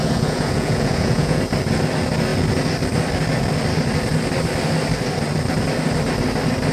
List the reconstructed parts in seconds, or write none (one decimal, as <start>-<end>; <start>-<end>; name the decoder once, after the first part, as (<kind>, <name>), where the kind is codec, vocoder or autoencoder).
0.0-1.4 (vocoder, Vocos)